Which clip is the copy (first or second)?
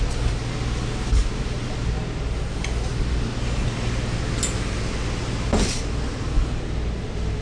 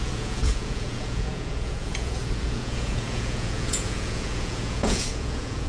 second